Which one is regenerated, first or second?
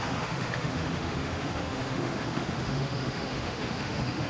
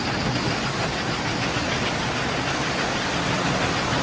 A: first